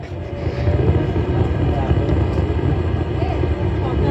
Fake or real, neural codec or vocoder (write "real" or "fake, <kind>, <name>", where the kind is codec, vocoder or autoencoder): real